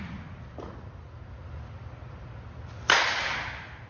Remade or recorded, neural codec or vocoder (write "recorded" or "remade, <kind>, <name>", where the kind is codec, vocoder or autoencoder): recorded